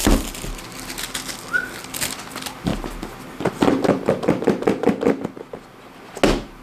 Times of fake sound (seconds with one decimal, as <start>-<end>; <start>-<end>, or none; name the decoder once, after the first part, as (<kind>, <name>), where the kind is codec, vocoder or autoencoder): none